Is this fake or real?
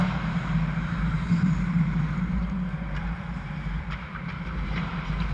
fake